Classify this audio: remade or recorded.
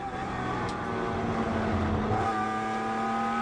recorded